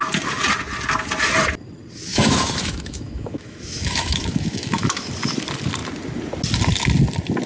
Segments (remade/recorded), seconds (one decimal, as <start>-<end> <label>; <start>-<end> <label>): 0.0-2.1 recorded; 2.1-5.1 remade; 5.1-7.5 recorded